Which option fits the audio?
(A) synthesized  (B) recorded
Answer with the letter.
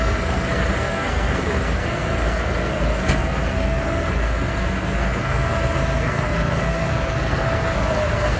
A